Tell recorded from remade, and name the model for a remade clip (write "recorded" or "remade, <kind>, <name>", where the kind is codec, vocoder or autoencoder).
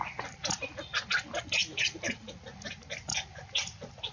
recorded